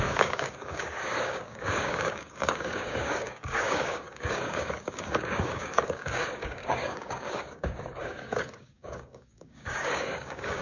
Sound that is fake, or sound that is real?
fake